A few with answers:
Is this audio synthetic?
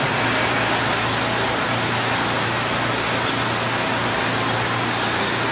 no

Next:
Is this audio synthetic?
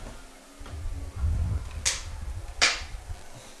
no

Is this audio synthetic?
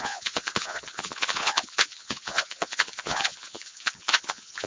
yes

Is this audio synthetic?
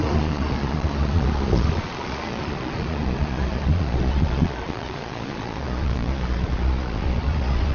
yes